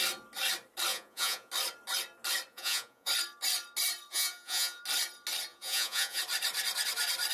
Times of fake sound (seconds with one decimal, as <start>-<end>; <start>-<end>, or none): 0.9-1.5; 2.5-3.1; 4.1-4.8; 5.5-6.2